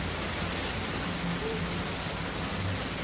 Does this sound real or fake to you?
real